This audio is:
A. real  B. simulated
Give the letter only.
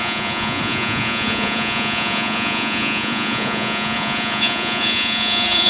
B